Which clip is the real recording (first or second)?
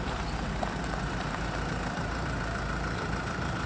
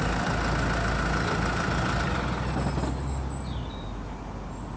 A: second